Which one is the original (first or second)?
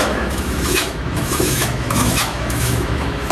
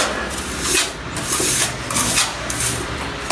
second